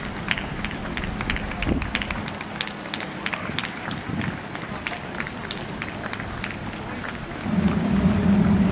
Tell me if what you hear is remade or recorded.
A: recorded